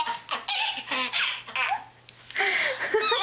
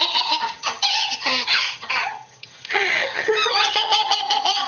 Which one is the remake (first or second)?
second